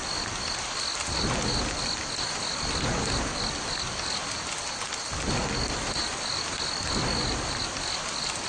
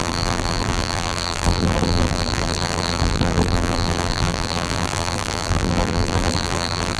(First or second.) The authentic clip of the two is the first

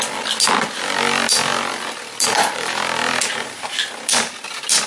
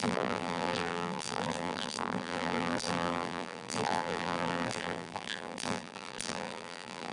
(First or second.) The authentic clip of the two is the first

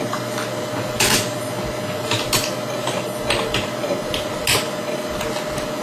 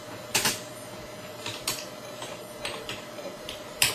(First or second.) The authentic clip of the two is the first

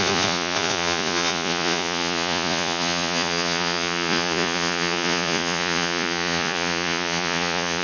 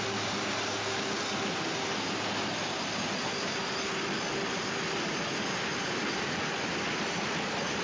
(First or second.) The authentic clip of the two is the second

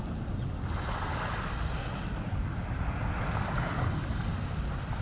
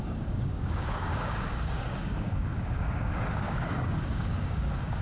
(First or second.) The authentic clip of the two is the first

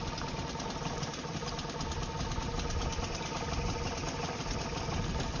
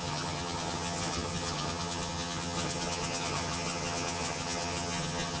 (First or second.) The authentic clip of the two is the first